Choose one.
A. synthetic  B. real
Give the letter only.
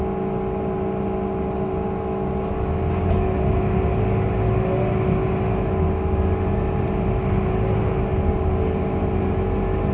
B